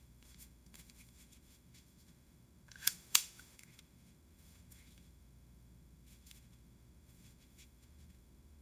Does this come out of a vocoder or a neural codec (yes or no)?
yes